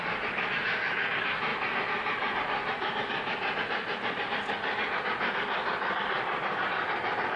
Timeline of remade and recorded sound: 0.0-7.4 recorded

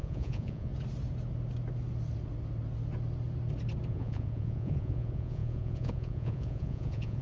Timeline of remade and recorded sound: 0.0-0.7 remade; 0.7-3.9 recorded; 3.9-7.2 remade

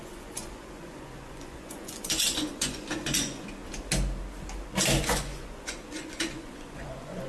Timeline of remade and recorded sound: 0.0-3.6 remade; 3.6-5.0 recorded; 5.0-7.3 remade

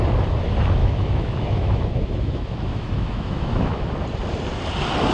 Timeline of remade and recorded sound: 0.0-0.8 recorded; 0.8-3.9 remade; 3.9-5.1 recorded

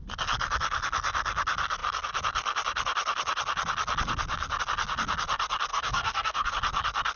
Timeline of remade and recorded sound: 0.0-5.7 recorded; 5.7-6.5 remade; 6.5-7.2 recorded

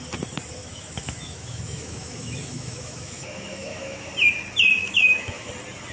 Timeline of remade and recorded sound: 0.0-0.6 recorded; 0.6-4.1 remade; 4.1-4.8 recorded; 4.8-5.5 remade; 5.5-5.9 recorded

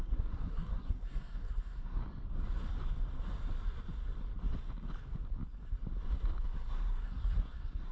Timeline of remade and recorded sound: 0.0-2.0 remade; 2.0-6.7 recorded; 6.7-7.9 remade

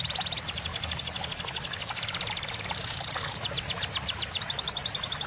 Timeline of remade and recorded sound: 0.0-0.7 remade; 0.7-2.3 recorded; 2.3-5.3 remade